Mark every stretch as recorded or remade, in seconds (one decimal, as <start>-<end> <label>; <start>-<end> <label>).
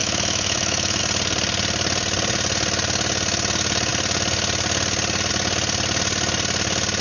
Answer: 0.0-1.0 remade; 1.0-7.0 recorded